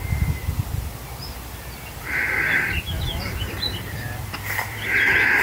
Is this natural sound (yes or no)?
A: no